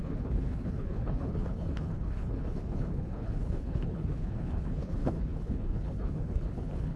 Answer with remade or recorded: remade